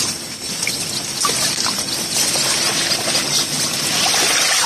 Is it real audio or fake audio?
real